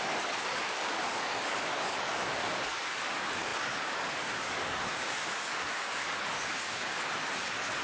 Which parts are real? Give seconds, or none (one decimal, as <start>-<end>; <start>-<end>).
none